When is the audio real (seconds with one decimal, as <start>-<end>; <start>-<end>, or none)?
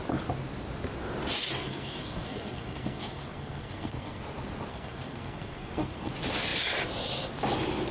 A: 0.0-1.6; 4.2-4.7; 6.1-7.9